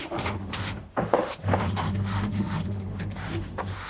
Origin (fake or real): fake